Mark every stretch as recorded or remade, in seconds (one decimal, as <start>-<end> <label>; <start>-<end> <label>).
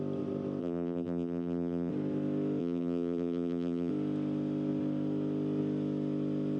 0.0-0.6 recorded; 0.6-1.9 remade; 1.9-2.6 recorded; 2.6-3.9 remade; 3.9-6.6 recorded